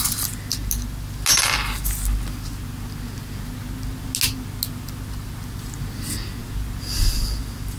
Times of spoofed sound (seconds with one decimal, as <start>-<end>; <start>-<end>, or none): none